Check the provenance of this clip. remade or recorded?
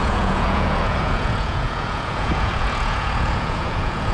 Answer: remade